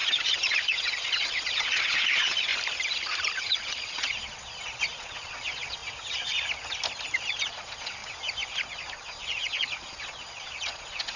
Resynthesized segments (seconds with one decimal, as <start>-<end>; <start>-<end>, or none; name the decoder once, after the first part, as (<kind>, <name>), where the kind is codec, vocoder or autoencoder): 0.0-2.5 (vocoder, Vocos); 3.4-5.8; 7.2-8.0; 9.0-11.2